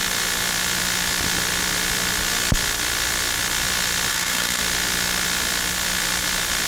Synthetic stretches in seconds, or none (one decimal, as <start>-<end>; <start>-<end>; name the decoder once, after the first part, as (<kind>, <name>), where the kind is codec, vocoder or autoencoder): 4.1-4.6 (codec, SNAC)